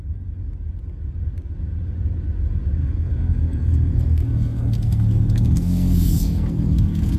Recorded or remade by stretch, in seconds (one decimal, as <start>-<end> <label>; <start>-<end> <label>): 0.0-2.8 recorded; 2.8-7.2 remade

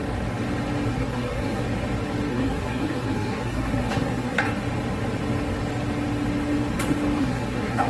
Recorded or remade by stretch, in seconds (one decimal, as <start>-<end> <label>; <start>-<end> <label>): 0.0-0.9 recorded; 0.9-1.6 remade; 1.6-2.3 recorded; 2.3-4.4 remade; 4.4-7.2 recorded; 7.2-7.9 remade

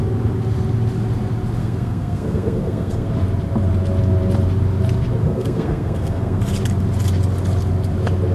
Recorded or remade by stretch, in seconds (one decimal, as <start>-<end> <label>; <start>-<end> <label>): 0.0-1.6 recorded; 1.6-3.1 remade; 3.1-5.2 recorded; 5.2-6.4 remade; 6.4-8.3 recorded

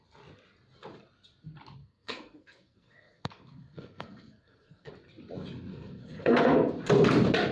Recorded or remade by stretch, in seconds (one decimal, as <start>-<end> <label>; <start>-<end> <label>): 0.0-1.8 recorded; 1.8-4.9 remade; 4.9-5.7 recorded; 5.7-6.7 remade; 6.7-7.5 recorded

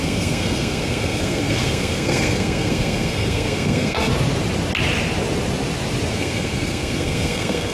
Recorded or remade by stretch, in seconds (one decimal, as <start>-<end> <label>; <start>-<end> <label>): 0.0-4.1 remade; 4.1-6.1 recorded; 6.1-7.7 remade

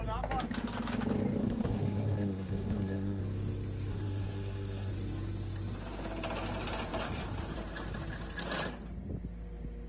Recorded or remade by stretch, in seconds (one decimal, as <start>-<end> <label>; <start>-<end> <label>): 0.0-1.4 recorded; 1.4-3.2 remade; 3.2-3.9 recorded; 3.9-4.9 remade; 4.9-9.9 recorded

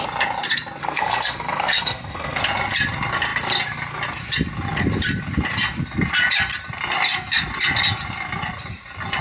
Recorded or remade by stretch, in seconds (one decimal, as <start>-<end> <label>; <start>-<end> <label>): 0.0-0.8 recorded; 0.8-2.4 remade; 2.4-9.2 recorded

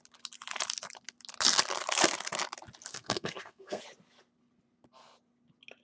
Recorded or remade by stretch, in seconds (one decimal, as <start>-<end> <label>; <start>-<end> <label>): 0.0-2.9 recorded; 2.9-3.8 remade; 3.8-5.8 recorded